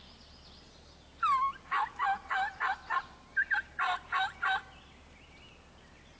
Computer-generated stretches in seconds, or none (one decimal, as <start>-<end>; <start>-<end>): none